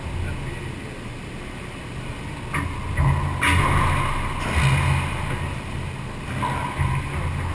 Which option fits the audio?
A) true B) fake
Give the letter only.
A